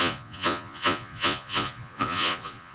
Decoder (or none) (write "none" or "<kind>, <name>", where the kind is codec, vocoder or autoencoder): vocoder, Vocos